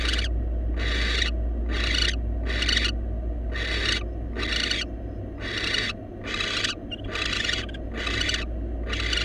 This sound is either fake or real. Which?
real